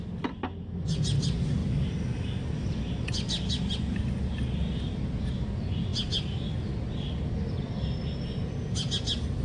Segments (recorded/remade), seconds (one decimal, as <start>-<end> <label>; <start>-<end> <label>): 0.0-9.4 recorded